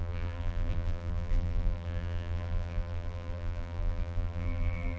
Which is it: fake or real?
fake